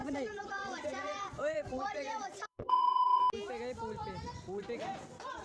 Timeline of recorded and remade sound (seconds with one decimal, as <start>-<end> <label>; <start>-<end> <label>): 0.0-3.2 remade; 3.2-5.4 recorded